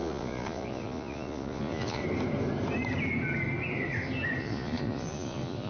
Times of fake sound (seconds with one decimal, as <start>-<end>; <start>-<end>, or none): 0.0-2.0; 4.4-5.7